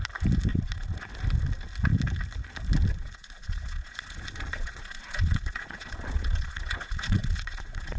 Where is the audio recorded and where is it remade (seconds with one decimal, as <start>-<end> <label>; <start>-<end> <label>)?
0.0-0.5 recorded; 0.5-1.1 remade; 1.1-2.9 recorded; 2.9-8.0 remade